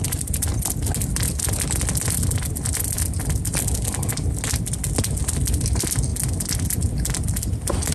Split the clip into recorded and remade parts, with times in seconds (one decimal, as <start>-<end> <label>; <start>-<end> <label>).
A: 0.0-7.9 recorded